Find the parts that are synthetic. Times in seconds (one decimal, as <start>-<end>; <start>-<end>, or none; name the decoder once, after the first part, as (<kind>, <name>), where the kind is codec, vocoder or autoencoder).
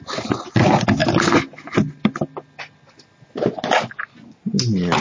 none